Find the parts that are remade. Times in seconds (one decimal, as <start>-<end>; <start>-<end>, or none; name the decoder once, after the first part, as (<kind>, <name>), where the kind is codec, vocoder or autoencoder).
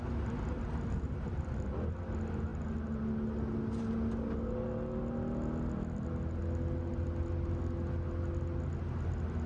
none